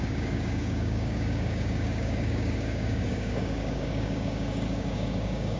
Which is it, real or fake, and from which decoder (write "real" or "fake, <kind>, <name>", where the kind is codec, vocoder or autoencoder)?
fake, codec, DAC